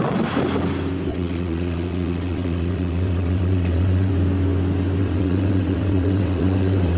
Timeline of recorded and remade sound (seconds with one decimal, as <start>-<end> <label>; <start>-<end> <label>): 0.0-1.1 recorded; 1.1-4.1 remade; 4.1-5.0 recorded; 5.0-7.0 remade